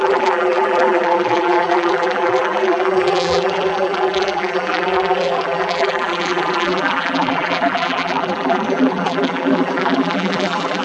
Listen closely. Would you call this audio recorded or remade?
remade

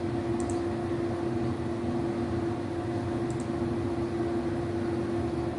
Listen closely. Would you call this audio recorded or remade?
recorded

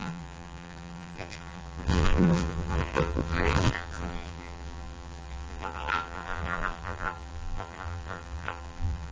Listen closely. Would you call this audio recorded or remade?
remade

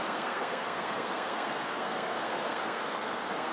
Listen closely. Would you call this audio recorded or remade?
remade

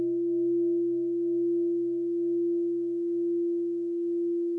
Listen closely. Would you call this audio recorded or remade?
recorded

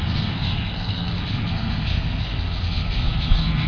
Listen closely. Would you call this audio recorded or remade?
remade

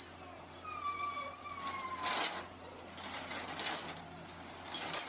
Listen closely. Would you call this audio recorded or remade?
recorded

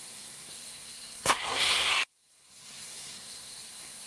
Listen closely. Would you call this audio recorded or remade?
remade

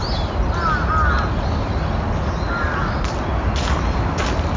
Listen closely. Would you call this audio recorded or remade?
recorded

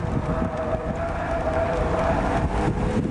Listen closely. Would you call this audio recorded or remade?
recorded